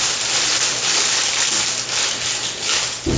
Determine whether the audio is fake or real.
real